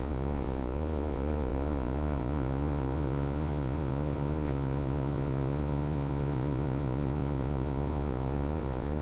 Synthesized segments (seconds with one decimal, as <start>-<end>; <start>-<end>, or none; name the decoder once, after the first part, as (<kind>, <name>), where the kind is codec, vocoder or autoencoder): 0.0-9.0 (vocoder, Vocos)